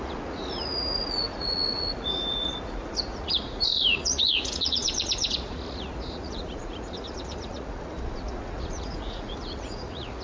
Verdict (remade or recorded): remade